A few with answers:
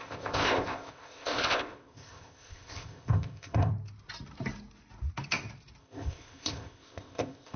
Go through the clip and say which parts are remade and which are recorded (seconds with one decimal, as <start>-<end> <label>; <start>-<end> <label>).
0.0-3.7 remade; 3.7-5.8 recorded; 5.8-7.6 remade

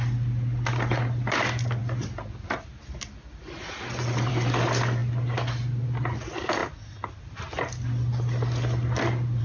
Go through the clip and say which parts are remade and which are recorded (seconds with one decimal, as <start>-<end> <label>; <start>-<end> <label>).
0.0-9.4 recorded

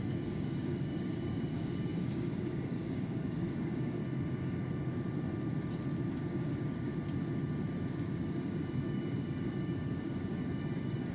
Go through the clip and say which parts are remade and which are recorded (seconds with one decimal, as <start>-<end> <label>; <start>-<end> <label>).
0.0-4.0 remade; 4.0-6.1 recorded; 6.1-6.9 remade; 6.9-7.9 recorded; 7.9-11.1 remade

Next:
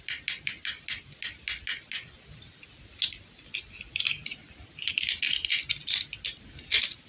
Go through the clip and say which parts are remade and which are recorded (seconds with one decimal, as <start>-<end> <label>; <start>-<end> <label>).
0.0-7.1 recorded

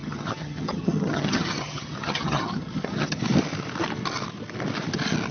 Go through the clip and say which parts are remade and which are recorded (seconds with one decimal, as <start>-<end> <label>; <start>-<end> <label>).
0.0-3.2 remade; 3.2-5.3 recorded